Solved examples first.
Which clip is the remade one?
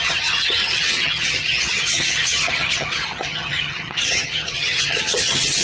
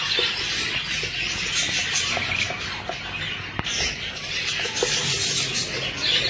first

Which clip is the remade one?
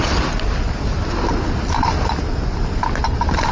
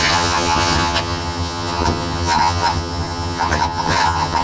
second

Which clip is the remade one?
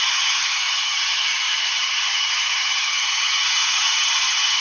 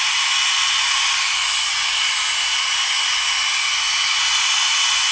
first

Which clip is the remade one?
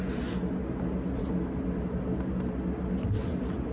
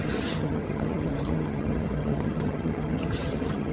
second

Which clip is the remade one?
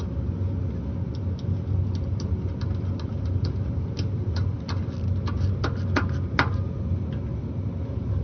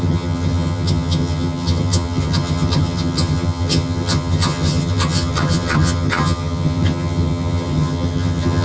second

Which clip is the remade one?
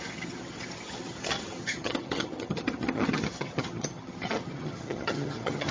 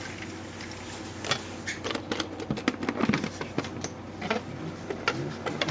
first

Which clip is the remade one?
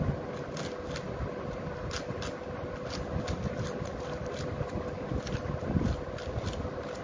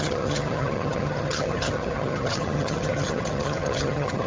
second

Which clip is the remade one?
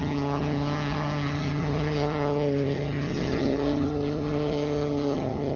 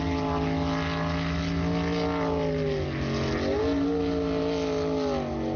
first